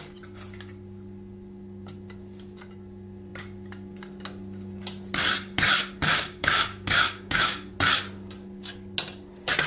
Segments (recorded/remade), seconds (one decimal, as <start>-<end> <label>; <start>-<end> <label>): 0.0-6.1 recorded; 6.1-7.7 remade; 7.7-9.7 recorded